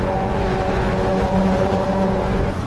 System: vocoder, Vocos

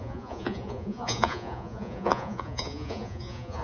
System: vocoder, Vocos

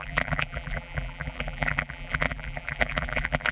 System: vocoder, BigVGAN v2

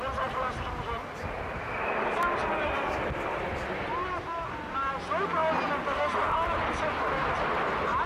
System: none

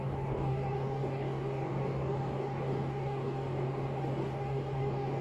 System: codec, DAC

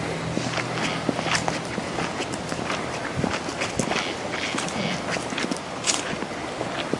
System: none